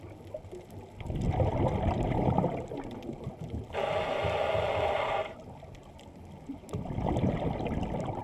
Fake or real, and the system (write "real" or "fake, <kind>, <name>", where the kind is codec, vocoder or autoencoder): real